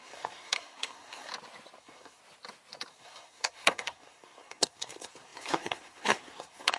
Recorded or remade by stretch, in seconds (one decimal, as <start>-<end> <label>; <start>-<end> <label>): 0.0-1.3 remade; 1.3-1.8 recorded; 1.8-2.2 remade; 2.2-2.9 recorded; 2.9-6.8 remade